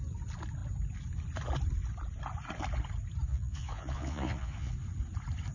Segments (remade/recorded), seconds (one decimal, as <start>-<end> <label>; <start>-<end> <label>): 0.0-3.3 recorded; 3.3-4.7 remade; 4.7-5.5 recorded